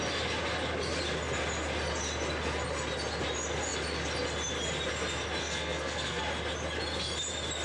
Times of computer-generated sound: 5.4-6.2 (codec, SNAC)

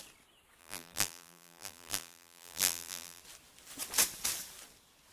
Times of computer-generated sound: 0.6-3.2 (vocoder, BigVGAN v2)